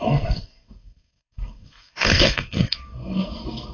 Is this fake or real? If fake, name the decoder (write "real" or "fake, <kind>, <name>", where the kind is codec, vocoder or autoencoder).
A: fake, codec, SNAC